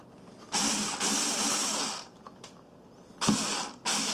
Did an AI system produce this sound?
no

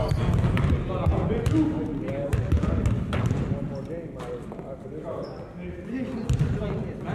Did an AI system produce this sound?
no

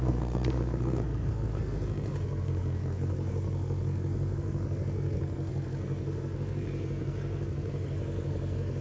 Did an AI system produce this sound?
yes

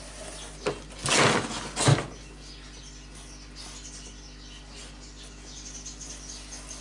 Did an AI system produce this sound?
no